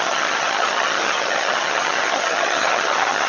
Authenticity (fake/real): fake